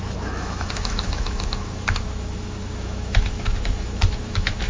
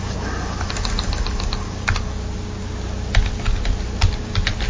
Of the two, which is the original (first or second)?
second